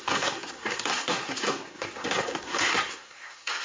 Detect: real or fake fake